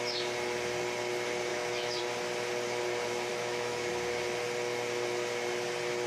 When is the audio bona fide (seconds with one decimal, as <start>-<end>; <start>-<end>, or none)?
0.0-1.5; 2.0-3.3; 3.9-6.1